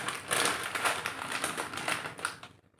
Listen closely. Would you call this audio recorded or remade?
recorded